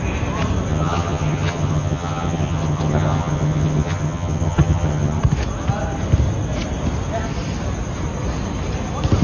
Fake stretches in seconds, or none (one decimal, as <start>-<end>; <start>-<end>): 0.7-5.2